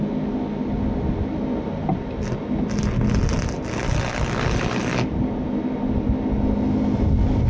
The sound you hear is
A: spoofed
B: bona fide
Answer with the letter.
B